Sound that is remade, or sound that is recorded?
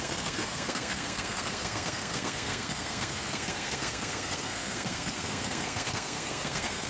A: remade